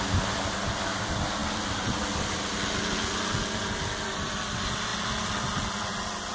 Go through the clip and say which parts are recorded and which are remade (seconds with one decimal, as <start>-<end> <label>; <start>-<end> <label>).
0.0-6.3 recorded

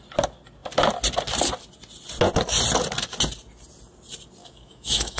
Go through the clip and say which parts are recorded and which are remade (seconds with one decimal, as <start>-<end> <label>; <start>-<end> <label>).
0.0-4.4 recorded; 4.4-5.2 remade